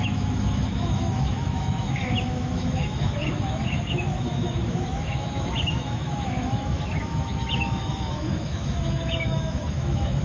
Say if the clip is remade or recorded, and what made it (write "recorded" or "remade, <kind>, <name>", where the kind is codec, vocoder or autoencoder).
remade, autoencoder, DAC-VAE